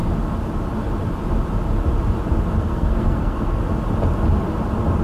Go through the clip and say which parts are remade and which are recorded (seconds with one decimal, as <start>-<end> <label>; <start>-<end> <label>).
0.0-2.6 recorded; 2.6-3.6 remade; 3.6-5.0 recorded